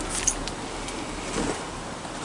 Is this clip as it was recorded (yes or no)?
yes